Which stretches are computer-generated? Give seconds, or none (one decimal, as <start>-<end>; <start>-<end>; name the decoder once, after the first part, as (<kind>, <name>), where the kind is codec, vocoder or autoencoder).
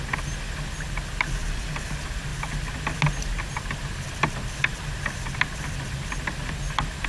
1.4-1.9 (vocoder, BigVGAN v2)